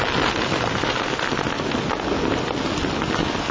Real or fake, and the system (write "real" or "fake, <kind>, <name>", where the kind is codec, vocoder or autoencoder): real